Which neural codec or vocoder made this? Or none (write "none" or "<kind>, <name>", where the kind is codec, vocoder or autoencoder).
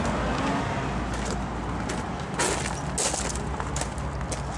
none